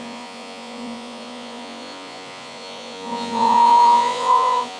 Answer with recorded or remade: remade